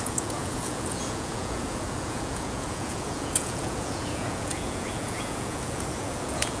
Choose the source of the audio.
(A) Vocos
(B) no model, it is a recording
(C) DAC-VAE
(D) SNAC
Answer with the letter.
A